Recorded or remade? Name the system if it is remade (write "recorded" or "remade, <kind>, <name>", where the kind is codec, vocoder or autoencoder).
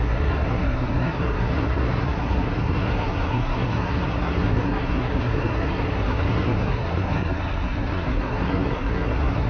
remade, codec, SNAC